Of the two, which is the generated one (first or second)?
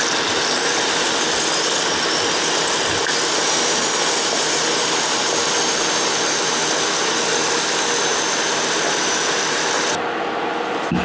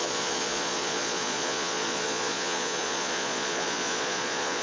second